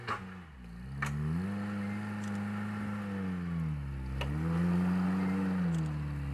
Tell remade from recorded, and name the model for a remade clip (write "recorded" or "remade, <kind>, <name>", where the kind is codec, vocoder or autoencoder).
recorded